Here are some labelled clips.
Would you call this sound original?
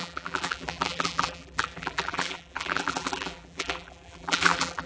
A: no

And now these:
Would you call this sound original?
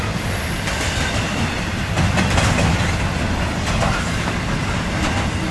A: no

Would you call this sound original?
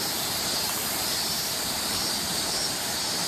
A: no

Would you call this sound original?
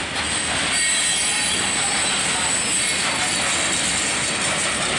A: yes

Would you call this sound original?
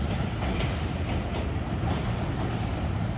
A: yes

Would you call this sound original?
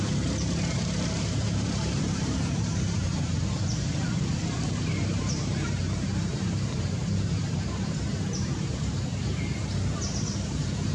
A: no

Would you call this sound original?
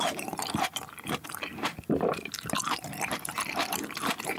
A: no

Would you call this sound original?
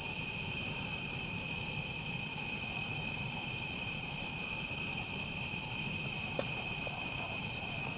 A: no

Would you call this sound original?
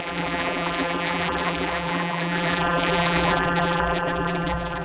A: no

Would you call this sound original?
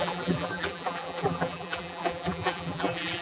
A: no